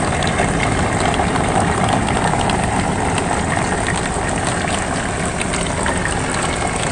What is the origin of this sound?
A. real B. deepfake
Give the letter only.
A